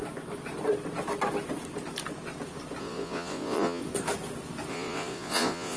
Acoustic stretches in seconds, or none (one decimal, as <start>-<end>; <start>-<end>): 0.0-2.8; 3.8-4.7